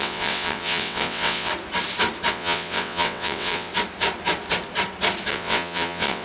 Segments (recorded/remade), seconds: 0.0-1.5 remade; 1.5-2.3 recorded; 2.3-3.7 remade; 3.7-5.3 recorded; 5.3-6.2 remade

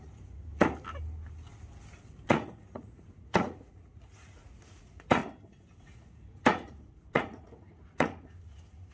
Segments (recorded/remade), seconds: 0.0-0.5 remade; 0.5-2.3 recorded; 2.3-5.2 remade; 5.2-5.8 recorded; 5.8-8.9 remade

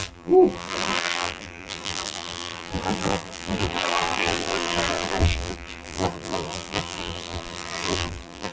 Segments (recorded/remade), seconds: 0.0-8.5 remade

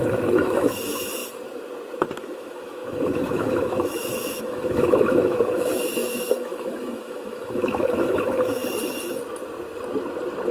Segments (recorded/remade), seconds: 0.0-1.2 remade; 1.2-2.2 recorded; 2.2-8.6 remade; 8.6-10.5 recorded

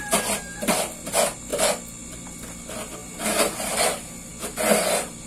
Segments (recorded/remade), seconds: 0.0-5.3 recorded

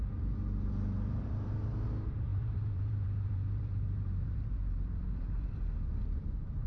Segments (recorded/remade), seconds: 0.0-6.7 remade

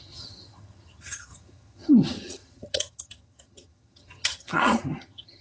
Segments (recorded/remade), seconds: 0.0-5.4 remade